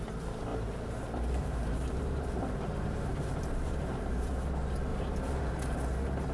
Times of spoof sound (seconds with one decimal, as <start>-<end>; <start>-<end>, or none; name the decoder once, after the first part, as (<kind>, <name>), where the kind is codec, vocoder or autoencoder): 0.5-4.3 (vocoder, BigVGAN v2); 4.9-5.5